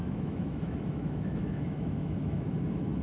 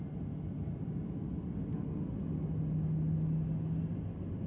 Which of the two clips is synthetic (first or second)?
first